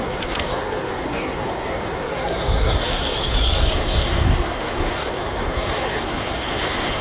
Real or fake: fake